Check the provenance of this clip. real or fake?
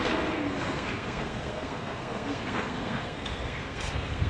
fake